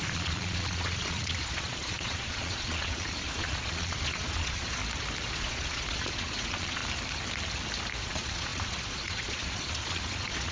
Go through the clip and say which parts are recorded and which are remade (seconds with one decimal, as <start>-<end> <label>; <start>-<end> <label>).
0.0-4.8 remade; 4.8-5.3 recorded; 5.3-6.8 remade; 6.8-8.0 recorded; 8.0-10.5 remade